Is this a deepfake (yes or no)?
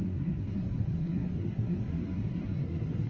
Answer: yes